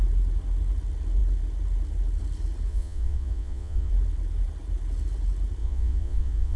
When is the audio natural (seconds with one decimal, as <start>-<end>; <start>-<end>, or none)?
0.0-2.7; 3.9-5.6